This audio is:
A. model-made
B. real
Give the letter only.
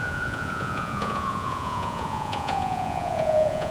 A